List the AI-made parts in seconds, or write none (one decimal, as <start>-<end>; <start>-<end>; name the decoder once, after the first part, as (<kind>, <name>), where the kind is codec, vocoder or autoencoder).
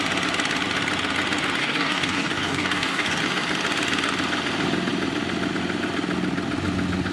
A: 1.6-3.2 (codec, DAC)